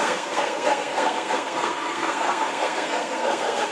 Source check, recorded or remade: remade